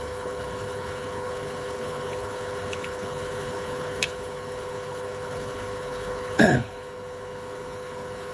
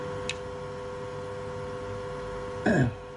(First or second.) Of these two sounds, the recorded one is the second